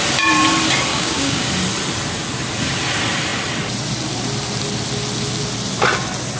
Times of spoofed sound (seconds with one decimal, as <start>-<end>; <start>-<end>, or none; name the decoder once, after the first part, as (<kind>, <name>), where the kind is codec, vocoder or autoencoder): 0.9-1.5 (codec, DAC)